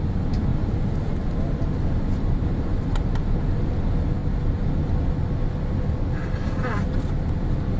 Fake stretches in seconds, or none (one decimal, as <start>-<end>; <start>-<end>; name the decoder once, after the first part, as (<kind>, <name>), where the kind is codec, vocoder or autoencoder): none